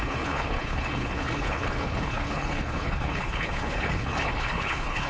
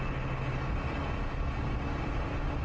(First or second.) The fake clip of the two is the first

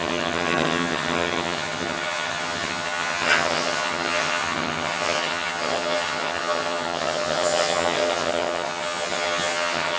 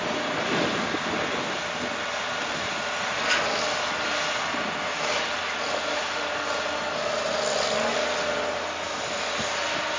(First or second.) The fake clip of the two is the first